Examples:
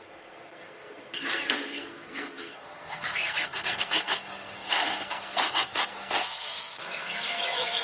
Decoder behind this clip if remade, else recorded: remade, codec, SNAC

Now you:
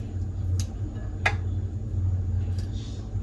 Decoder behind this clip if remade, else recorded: recorded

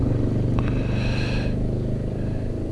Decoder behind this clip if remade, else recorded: recorded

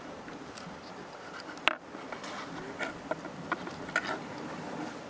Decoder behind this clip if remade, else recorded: recorded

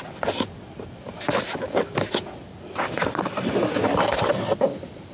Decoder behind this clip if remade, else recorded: recorded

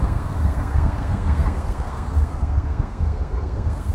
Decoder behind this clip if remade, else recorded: remade, codec, SNAC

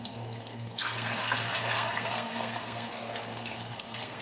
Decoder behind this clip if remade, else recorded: remade, codec, SNAC